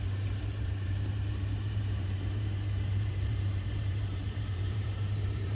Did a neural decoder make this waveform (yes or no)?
yes